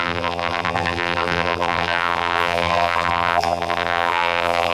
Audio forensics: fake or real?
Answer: fake